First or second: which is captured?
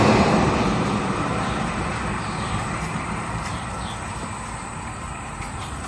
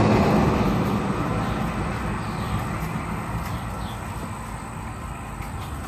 second